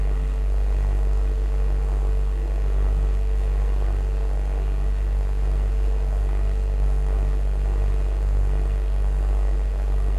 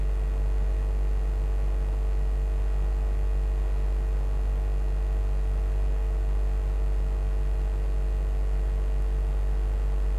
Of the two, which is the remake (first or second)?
first